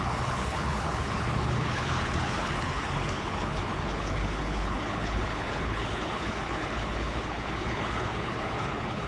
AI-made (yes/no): yes